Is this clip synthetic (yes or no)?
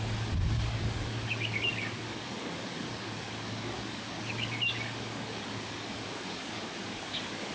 yes